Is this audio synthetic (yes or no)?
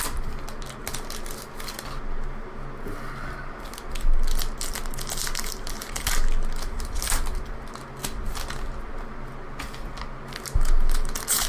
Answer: no